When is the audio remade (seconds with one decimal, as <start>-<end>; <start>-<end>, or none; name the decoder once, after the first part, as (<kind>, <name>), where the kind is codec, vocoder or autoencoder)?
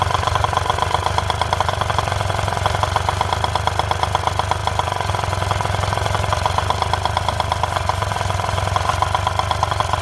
none